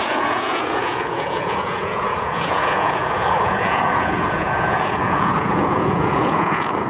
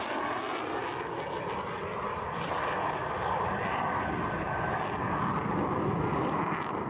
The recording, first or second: second